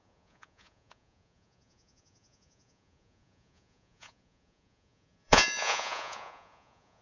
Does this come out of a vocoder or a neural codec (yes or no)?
yes